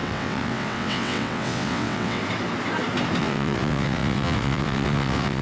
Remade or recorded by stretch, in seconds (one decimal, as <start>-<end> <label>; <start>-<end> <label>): 0.0-2.2 remade; 2.2-3.2 recorded; 3.2-5.4 remade